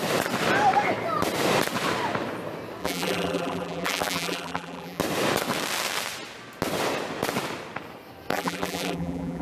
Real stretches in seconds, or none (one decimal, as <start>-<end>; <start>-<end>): 0.0-2.8; 5.0-8.3